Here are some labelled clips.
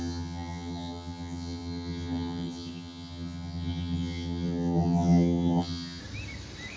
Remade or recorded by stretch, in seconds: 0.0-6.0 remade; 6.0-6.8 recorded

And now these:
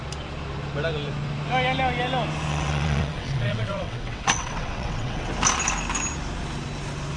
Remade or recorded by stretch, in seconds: 0.0-2.5 recorded; 2.5-5.3 remade; 5.3-7.2 recorded

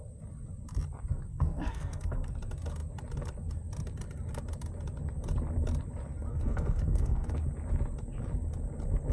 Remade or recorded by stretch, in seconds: 0.0-1.3 recorded; 1.3-2.3 remade; 2.3-6.3 recorded; 6.3-7.3 remade; 7.3-9.1 recorded

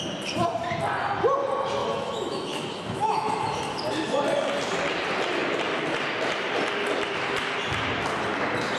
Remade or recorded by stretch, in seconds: 0.0-1.8 recorded; 1.8-3.3 remade; 3.3-8.8 recorded

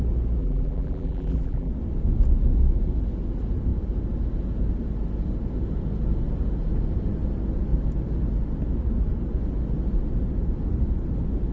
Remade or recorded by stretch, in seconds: 0.0-0.4 recorded; 0.4-1.7 remade; 1.7-11.5 recorded

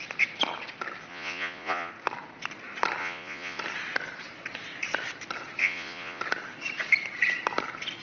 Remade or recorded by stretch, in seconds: 0.0-1.1 recorded; 1.1-1.9 remade; 1.9-3.0 recorded; 3.0-3.6 remade; 3.6-5.6 recorded; 5.6-6.2 remade; 6.2-8.0 recorded

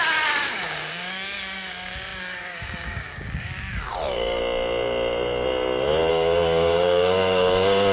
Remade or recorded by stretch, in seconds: 0.0-4.4 remade; 4.4-6.1 recorded; 6.1-7.9 remade

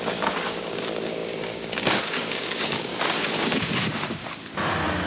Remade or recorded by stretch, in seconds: 0.0-2.9 remade; 2.9-3.4 recorded; 3.4-4.2 remade; 4.2-5.1 recorded